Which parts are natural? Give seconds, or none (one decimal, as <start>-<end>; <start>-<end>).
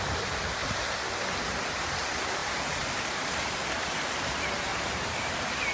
0.0-4.7; 5.3-5.7